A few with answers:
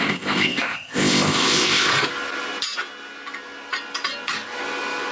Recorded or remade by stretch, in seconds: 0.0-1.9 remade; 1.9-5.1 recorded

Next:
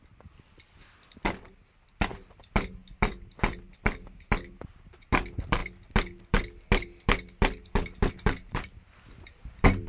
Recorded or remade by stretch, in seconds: 0.0-9.9 recorded